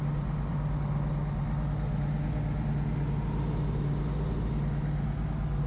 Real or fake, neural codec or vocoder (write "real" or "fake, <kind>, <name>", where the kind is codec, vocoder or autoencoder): real